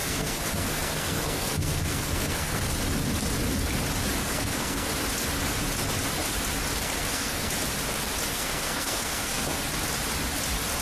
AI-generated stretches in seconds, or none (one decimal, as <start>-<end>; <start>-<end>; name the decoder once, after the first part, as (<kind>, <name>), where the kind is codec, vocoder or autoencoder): 0.0-2.7 (codec, SNAC); 4.2-4.9; 6.8-7.5; 8.3-9.6